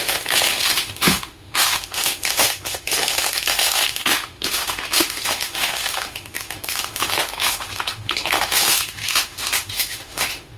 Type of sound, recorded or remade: remade